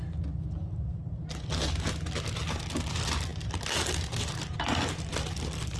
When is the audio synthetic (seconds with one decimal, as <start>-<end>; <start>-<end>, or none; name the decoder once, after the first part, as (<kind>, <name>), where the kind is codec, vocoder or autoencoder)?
none